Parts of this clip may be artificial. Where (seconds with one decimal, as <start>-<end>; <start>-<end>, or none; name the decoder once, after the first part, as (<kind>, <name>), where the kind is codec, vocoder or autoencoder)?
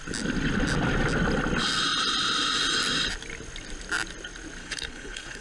4.6-5.4 (codec, HILCodec)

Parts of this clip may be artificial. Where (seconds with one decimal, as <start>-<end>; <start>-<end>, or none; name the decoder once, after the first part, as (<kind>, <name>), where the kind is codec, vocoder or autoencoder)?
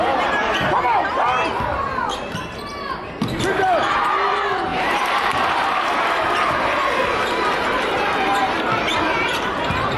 4.7-6.6 (vocoder, BigVGAN v2); 8.9-10.0